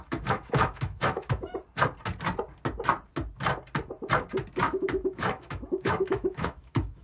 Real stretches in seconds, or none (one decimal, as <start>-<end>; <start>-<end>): 1.5-4.6